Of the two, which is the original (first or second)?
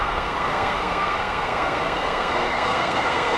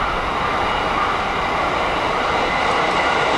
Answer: second